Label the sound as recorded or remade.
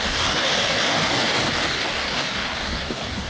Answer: remade